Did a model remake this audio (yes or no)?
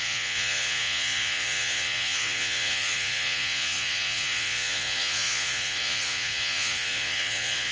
yes